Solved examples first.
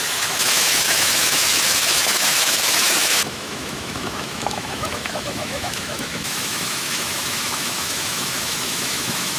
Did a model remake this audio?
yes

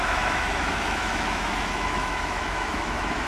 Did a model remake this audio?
yes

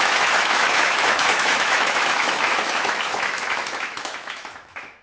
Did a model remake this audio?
yes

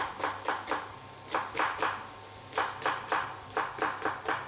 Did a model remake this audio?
no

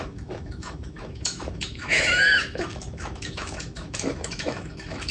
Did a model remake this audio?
yes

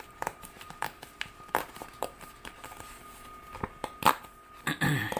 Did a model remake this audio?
no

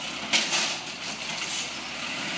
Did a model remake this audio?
no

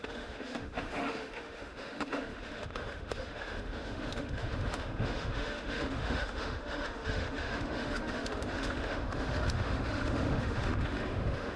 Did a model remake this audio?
yes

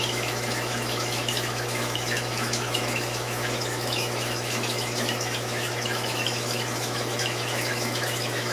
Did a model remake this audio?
yes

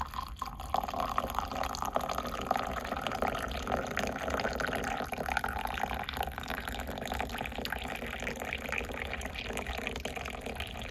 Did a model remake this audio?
no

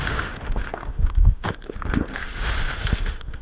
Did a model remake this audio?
yes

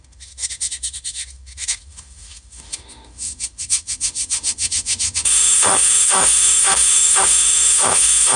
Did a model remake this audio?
yes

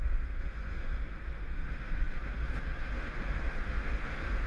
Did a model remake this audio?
yes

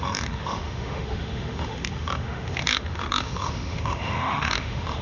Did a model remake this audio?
yes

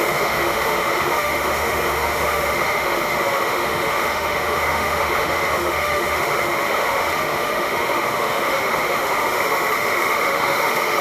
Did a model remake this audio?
yes